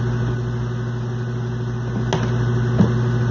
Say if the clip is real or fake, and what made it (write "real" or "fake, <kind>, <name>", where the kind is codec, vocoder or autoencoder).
real